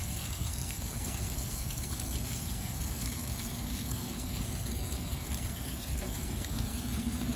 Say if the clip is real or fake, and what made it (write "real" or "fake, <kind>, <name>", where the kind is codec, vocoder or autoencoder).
fake, codec, SNAC